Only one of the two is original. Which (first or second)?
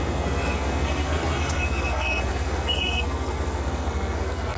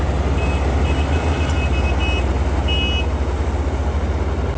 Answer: second